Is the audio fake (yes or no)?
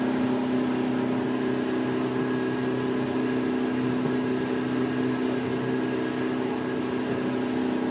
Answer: no